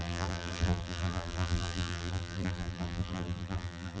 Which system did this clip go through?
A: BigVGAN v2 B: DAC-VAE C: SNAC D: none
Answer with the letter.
A